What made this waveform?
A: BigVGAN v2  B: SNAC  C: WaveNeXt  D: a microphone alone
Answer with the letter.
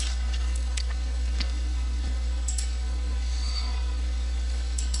B